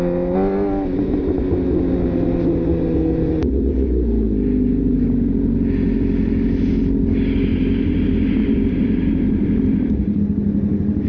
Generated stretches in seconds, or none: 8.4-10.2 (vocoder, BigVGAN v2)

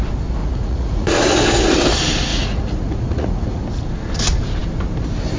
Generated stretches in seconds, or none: 0.4-1.1 (vocoder, Vocos); 2.3-3.6

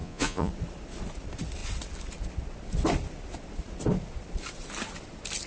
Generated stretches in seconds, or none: 0.0-0.5 (vocoder, Vocos)